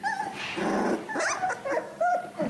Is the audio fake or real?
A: real